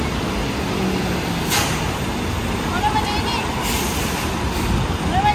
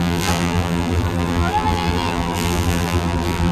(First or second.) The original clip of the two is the first